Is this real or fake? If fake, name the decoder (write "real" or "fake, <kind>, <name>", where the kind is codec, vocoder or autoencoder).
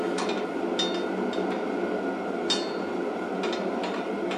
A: real